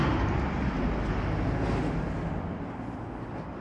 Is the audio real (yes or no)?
yes